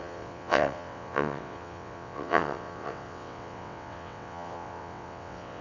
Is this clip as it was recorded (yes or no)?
no